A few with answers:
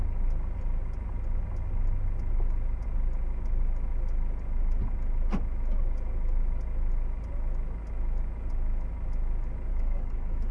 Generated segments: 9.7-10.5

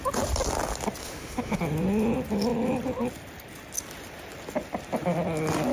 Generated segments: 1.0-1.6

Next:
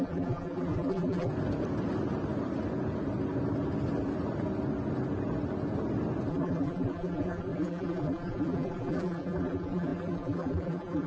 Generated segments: 0.0-1.3; 6.3-11.1